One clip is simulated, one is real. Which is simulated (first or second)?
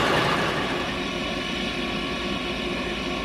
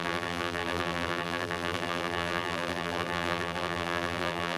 second